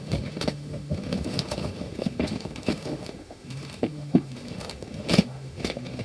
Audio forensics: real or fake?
fake